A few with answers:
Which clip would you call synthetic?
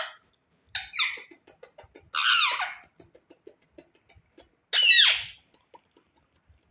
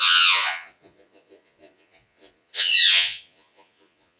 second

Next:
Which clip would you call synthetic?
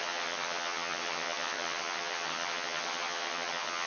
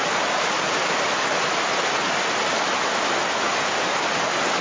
first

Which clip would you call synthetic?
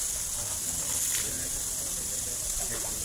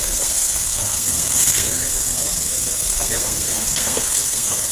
second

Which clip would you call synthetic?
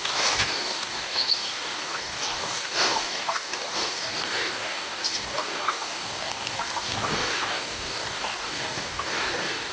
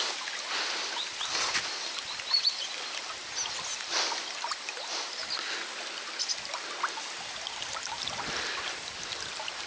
first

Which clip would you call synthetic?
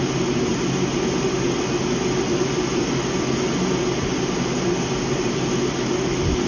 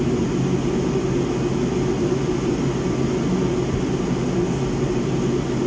first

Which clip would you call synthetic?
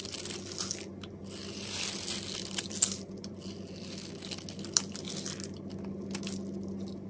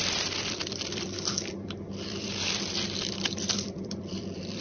second